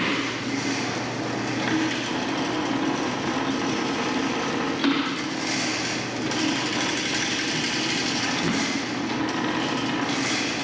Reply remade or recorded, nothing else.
recorded